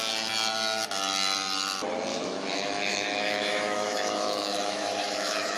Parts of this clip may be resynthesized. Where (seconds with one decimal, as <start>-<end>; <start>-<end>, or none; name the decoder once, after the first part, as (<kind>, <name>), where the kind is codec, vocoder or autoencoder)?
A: 2.1-5.6 (autoencoder, DAC-VAE)